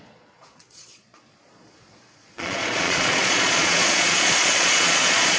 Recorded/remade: remade